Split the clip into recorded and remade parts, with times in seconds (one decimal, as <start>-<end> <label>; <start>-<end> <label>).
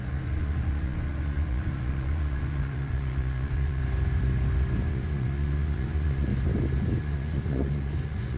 0.0-3.8 remade; 3.8-4.9 recorded; 4.9-6.3 remade; 6.3-7.0 recorded; 7.0-8.4 remade